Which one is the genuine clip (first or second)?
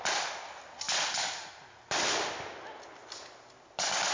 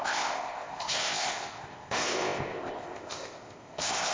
first